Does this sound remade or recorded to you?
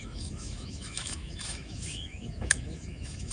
remade